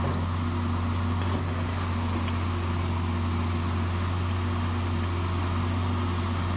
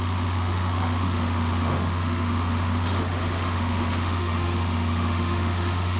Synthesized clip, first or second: second